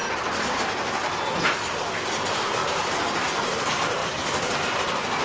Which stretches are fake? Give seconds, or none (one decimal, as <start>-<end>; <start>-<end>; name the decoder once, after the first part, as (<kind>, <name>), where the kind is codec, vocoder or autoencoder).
2.2-2.6 (vocoder, BigVGAN v2); 3.3-4.0; 4.6-5.2